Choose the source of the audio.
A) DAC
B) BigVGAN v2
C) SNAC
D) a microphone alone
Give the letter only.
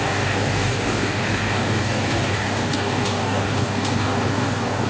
A